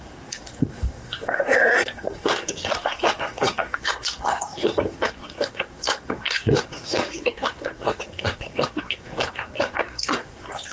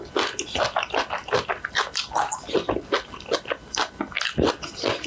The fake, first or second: first